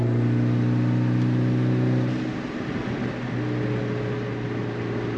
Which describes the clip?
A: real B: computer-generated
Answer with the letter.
A